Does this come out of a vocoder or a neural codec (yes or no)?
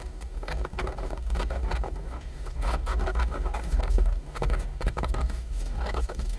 yes